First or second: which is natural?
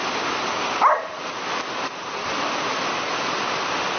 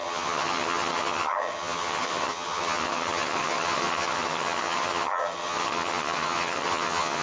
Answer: first